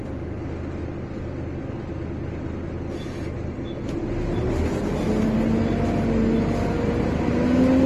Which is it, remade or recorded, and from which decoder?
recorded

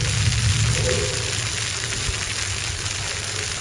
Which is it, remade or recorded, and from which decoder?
recorded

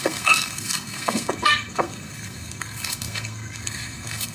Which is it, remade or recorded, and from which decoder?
remade, codec, SNAC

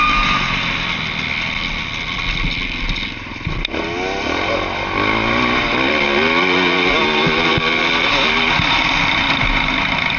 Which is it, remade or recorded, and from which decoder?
recorded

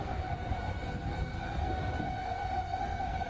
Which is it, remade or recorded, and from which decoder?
remade, codec, SNAC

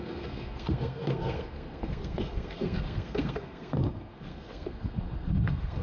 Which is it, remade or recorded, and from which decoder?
remade, codec, SNAC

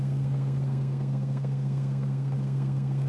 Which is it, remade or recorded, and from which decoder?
remade, codec, SNAC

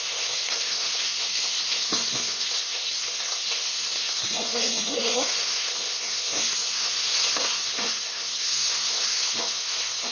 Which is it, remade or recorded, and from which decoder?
remade, codec, SNAC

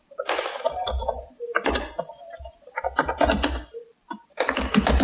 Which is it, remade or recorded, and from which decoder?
recorded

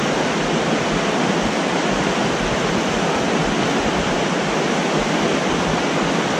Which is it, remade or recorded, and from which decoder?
recorded